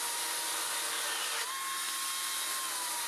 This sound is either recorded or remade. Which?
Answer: recorded